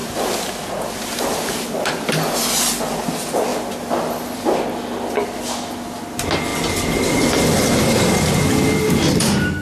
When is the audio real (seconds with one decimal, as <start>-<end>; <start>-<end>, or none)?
0.0-9.6